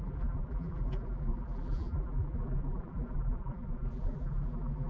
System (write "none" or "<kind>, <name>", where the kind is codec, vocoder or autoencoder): vocoder, BigVGAN v2